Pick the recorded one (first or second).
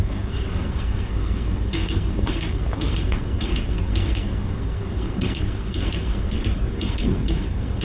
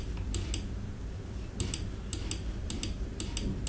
second